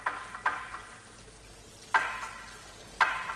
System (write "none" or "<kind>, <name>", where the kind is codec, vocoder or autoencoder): none